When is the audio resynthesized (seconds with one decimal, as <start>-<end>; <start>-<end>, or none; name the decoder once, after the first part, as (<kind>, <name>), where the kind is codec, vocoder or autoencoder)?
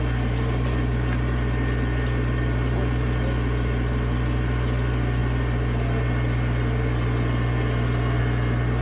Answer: none